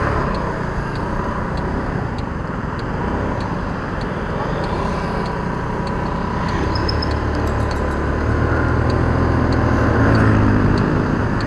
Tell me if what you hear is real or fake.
real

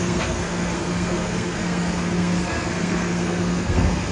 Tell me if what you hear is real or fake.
fake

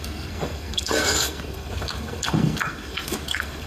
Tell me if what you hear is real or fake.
fake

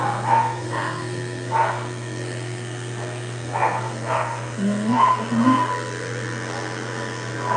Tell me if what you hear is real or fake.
fake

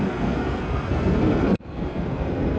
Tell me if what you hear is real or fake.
fake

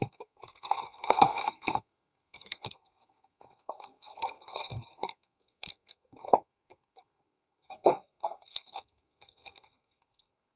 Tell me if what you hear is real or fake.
fake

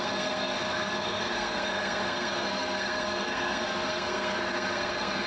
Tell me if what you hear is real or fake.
fake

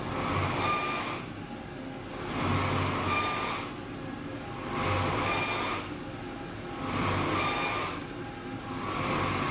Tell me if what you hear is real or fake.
real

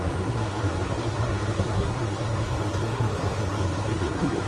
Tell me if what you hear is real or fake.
fake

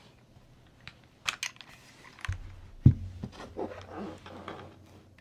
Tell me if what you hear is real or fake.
real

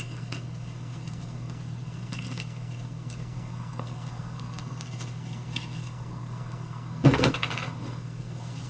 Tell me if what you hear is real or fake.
fake